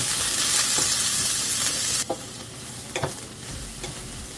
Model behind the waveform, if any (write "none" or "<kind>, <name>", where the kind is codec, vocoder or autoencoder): none